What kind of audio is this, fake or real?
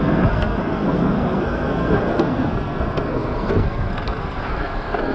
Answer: fake